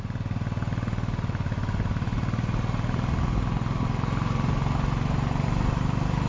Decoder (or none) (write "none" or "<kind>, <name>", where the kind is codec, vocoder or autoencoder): none